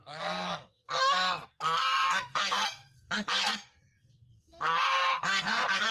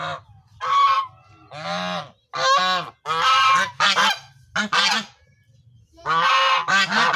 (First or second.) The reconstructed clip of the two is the first